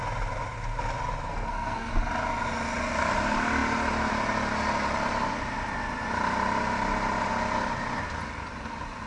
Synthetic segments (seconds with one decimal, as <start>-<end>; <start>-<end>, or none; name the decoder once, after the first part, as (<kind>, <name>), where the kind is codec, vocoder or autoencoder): 1.3-1.9 (codec, SNAC)